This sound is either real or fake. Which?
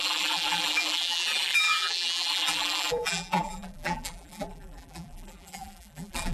fake